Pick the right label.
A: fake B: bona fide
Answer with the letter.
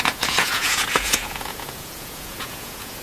A